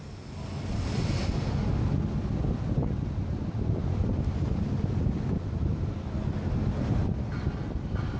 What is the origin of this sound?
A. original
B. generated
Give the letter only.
A